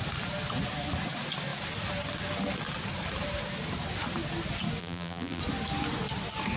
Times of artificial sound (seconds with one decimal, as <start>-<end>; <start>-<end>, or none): 4.8-5.4